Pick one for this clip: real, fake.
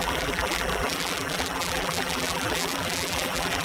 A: fake